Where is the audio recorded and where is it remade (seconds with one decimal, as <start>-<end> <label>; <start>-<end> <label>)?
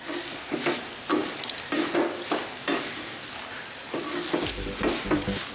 0.0-5.5 recorded